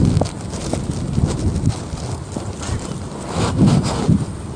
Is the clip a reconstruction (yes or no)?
no